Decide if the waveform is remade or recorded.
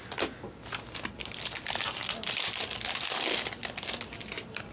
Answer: recorded